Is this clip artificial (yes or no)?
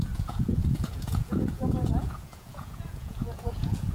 yes